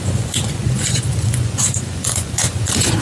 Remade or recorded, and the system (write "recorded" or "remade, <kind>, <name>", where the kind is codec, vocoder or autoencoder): remade, vocoder, Vocos